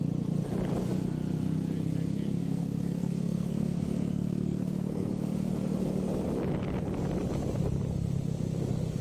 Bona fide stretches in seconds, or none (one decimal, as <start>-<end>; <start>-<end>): 0.0-2.4; 5.1-9.0